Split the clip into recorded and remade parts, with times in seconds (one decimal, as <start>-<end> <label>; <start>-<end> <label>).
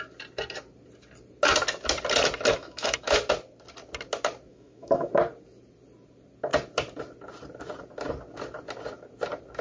0.0-2.5 recorded; 2.5-3.2 remade; 3.2-4.5 recorded; 4.5-5.1 remade; 5.1-9.6 recorded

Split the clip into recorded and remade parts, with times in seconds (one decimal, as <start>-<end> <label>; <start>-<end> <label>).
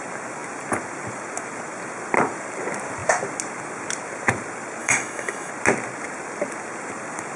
0.0-4.8 recorded; 4.8-5.5 remade; 5.5-7.4 recorded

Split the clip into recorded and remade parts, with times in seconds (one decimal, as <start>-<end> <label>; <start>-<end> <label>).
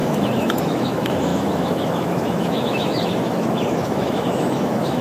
0.0-5.0 remade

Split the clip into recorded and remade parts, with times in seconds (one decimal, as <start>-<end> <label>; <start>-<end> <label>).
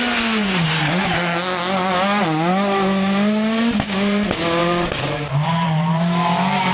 0.0-4.6 recorded; 4.6-6.7 remade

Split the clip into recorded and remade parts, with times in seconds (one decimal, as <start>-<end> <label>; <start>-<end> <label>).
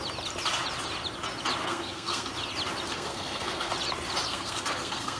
0.0-1.6 recorded; 1.6-2.3 remade; 2.3-2.9 recorded; 2.9-3.7 remade; 3.7-4.3 recorded; 4.3-5.2 remade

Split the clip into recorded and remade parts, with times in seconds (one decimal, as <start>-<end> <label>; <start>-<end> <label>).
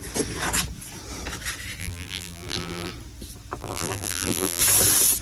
0.0-1.8 recorded; 1.8-2.9 remade; 2.9-3.6 recorded; 3.6-4.6 remade; 4.6-5.2 recorded